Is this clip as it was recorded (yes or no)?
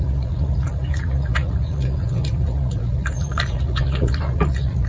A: no